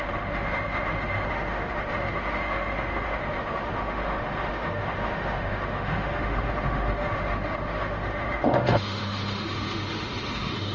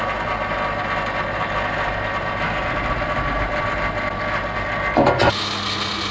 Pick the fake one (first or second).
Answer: first